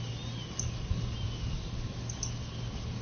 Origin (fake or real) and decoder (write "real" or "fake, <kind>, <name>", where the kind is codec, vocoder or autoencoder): real